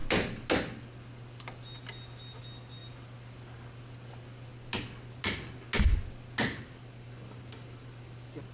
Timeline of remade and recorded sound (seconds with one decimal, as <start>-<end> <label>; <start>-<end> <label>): 0.0-8.5 recorded